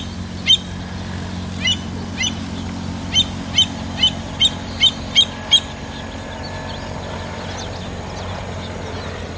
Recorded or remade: recorded